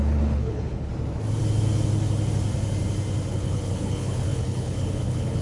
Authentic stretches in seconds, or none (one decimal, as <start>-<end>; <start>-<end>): 0.9-3.3